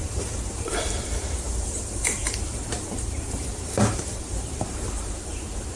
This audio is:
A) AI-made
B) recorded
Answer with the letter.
A